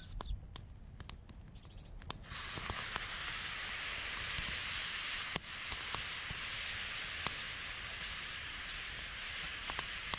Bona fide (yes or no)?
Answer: yes